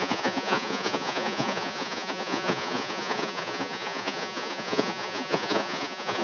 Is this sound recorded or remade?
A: remade